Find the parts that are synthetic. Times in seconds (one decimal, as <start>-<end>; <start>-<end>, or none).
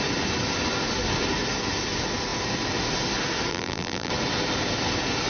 3.5-4.1